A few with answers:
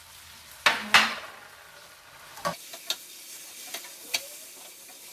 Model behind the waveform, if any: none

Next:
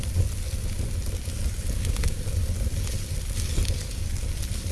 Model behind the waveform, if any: none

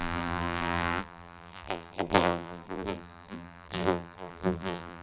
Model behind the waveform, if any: vocoder, BigVGAN v2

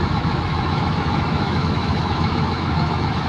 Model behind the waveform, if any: autoencoder, DAC-VAE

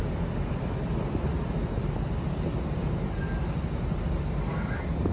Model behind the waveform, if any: none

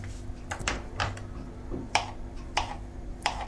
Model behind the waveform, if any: vocoder, BigVGAN v2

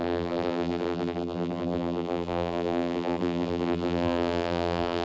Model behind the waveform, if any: vocoder, BigVGAN v2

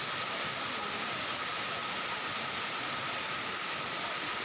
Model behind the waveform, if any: none